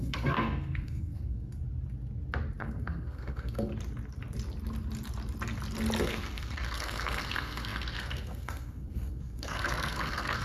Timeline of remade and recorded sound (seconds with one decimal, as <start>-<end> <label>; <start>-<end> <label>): 0.0-1.6 remade; 1.6-2.6 recorded; 2.6-3.7 remade; 3.7-6.0 recorded; 6.0-10.4 remade